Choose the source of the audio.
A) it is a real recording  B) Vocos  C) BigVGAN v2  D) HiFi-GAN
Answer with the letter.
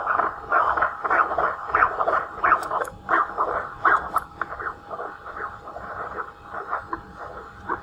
A